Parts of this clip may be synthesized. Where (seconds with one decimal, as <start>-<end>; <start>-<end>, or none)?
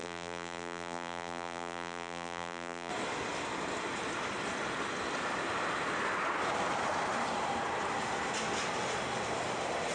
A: 0.0-2.9